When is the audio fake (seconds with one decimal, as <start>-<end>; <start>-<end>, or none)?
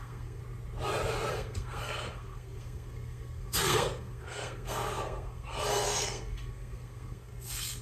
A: 0.0-0.4; 1.3-7.8